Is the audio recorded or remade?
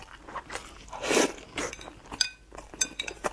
recorded